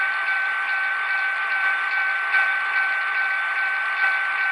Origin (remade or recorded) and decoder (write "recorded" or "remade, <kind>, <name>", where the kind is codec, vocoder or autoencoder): recorded